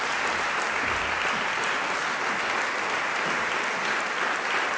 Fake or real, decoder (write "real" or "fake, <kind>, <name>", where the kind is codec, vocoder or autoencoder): real